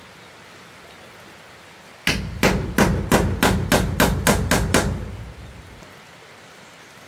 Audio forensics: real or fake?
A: real